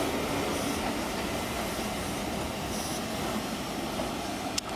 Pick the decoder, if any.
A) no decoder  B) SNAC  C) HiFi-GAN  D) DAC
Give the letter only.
A